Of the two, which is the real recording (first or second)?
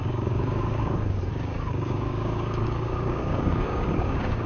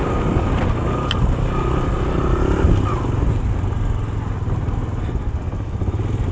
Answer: second